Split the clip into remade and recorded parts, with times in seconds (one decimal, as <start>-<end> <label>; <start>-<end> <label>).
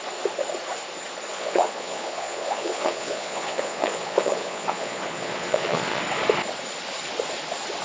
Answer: 0.0-1.3 recorded; 1.3-6.0 remade; 6.0-7.8 recorded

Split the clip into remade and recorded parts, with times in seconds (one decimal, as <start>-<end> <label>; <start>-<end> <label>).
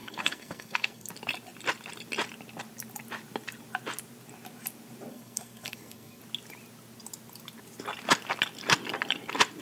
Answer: 0.0-1.1 remade; 1.1-5.1 recorded; 5.1-6.2 remade; 6.2-9.6 recorded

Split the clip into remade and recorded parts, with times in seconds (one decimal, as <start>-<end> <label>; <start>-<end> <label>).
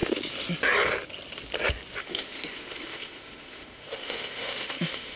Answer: 0.0-2.0 recorded; 2.0-5.2 remade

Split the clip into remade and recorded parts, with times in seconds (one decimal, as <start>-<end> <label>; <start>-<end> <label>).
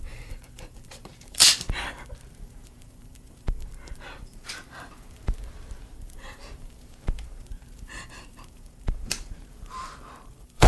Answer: 0.0-1.4 remade; 1.4-2.3 recorded; 2.3-10.7 remade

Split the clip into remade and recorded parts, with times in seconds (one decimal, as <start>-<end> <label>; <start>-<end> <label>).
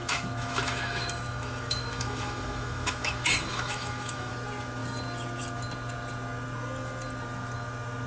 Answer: 0.0-4.3 remade; 4.3-8.1 recorded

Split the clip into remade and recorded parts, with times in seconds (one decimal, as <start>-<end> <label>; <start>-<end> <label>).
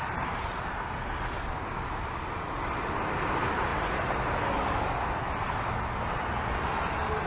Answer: 0.0-7.3 recorded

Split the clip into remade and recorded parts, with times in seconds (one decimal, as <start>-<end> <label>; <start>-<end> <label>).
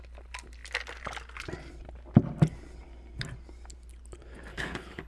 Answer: 0.0-4.5 recorded; 4.5-5.1 remade